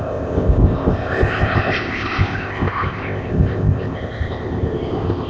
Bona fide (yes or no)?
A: no